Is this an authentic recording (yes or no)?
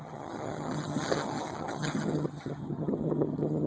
no